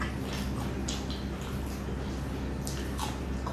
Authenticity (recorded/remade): recorded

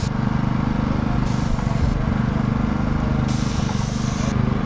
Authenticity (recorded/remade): recorded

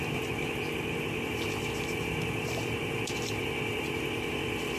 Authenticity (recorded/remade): remade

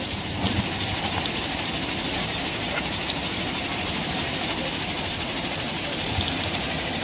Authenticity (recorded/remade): remade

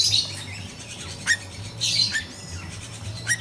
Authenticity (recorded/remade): remade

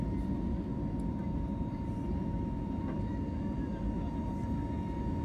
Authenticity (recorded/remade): remade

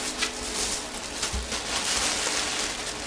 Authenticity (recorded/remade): recorded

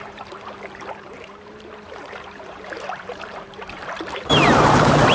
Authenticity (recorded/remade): remade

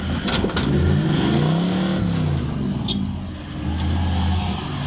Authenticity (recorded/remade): recorded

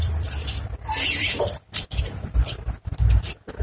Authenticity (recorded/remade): remade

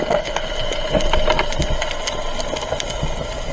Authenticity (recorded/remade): recorded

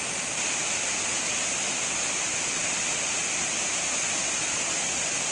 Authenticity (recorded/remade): recorded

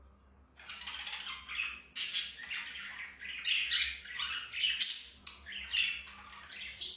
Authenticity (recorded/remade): recorded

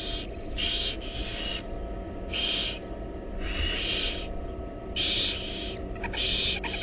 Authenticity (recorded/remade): recorded